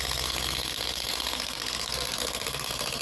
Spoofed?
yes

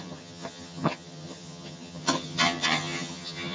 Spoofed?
yes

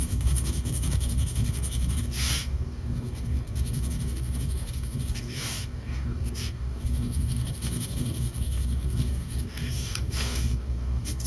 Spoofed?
yes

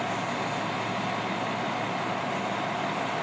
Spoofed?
no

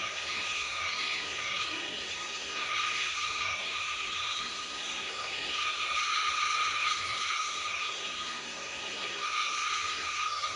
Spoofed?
yes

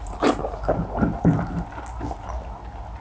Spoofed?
no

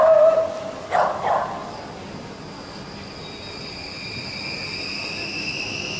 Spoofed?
no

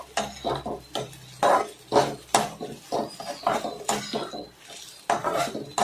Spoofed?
no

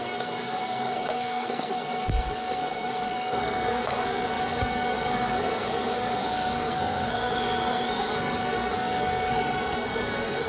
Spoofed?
yes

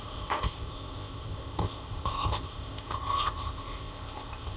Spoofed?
yes